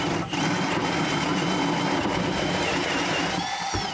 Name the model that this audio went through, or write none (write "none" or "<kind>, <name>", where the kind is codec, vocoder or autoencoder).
vocoder, BigVGAN v2